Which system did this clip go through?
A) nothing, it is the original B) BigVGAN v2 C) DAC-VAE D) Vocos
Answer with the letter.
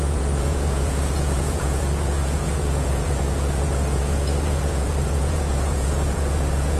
D